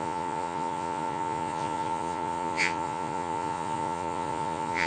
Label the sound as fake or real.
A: fake